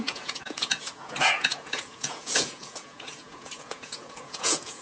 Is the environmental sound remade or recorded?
remade